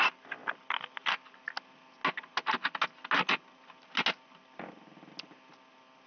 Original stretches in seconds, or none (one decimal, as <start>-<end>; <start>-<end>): 0.0-6.1